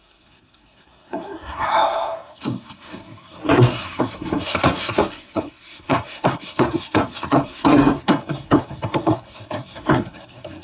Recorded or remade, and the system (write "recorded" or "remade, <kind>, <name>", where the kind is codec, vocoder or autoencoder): remade, codec, SNAC